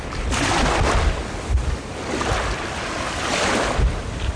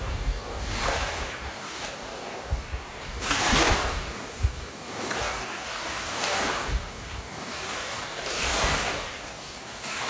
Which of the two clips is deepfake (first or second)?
second